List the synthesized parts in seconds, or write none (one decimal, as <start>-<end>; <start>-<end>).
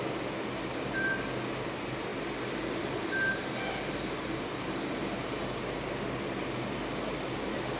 none